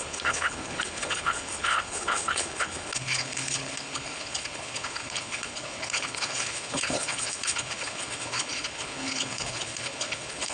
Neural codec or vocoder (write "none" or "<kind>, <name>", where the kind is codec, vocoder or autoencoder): codec, HILCodec